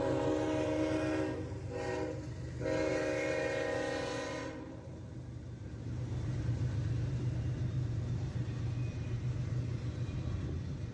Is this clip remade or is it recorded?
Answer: remade